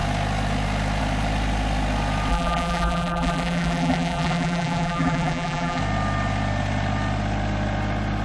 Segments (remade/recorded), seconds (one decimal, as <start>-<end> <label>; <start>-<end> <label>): 0.0-2.3 recorded; 2.3-5.8 remade; 5.8-8.2 recorded